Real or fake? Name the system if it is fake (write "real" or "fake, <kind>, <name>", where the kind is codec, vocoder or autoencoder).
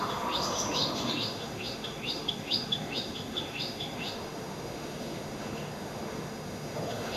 fake, autoencoder, DAC-VAE